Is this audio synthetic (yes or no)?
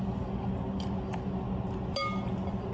no